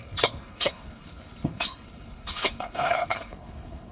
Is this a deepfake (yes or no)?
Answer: yes